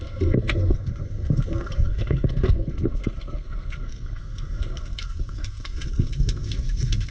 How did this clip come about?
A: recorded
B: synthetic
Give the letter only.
B